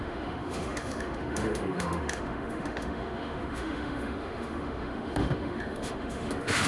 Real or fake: fake